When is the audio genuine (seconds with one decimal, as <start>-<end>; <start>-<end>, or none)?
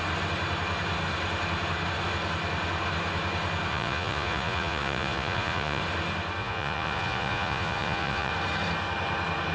0.0-3.7; 5.8-6.4; 8.3-9.5